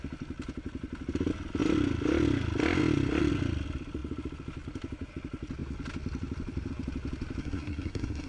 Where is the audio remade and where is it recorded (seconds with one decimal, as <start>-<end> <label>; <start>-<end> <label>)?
0.0-7.4 recorded; 7.4-8.3 remade